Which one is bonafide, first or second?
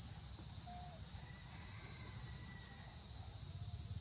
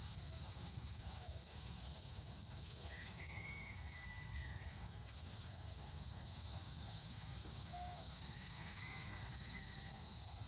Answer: first